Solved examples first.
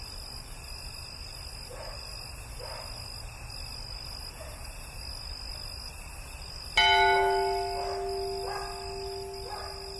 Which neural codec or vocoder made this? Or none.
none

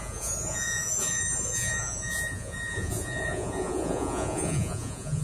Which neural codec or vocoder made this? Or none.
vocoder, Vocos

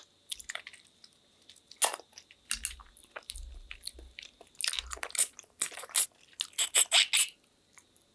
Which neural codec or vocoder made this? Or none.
none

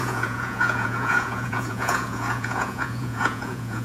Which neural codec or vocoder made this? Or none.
vocoder, Vocos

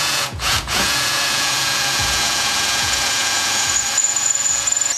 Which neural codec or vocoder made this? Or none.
vocoder, Vocos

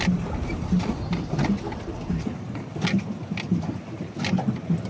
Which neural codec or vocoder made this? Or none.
none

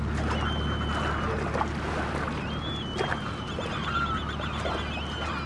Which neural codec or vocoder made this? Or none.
none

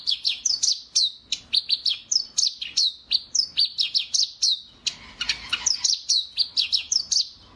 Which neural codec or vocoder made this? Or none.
none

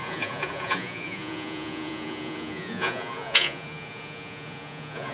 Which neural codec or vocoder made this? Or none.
vocoder, Vocos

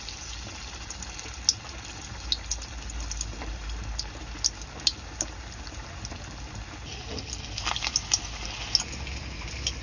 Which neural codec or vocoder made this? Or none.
none